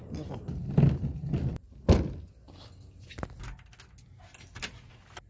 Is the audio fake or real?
real